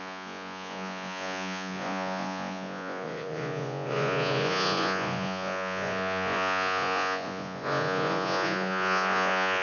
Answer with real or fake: fake